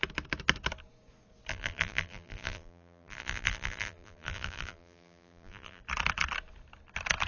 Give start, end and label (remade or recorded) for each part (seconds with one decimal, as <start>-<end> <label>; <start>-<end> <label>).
0.0-1.5 recorded; 1.5-5.8 remade; 5.8-7.3 recorded